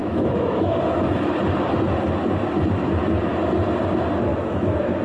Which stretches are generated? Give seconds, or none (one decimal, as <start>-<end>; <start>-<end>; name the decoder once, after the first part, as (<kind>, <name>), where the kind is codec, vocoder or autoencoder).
0.0-0.8 (autoencoder, DAC-VAE); 4.3-5.0